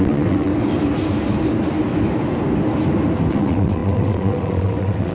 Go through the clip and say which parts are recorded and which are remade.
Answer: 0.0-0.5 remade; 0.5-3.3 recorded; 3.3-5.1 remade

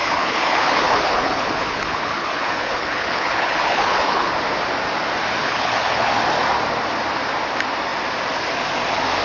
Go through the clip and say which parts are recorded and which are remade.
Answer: 0.0-4.3 remade; 4.3-5.4 recorded; 5.4-6.1 remade; 6.1-9.2 recorded